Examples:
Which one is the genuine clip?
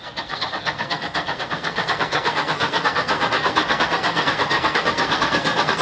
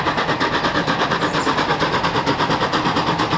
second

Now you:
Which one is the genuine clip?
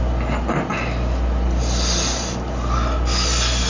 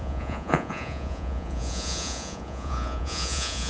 first